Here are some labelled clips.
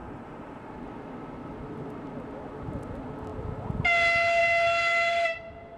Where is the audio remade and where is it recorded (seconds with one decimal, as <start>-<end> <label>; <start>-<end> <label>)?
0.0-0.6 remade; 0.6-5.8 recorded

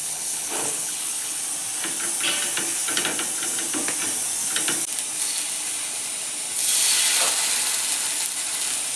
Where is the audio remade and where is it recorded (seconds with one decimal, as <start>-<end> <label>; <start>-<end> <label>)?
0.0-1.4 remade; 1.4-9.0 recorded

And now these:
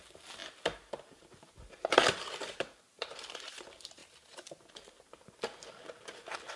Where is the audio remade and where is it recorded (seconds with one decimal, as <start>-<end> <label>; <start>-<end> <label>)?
0.0-4.0 remade; 4.0-4.7 recorded; 4.7-6.6 remade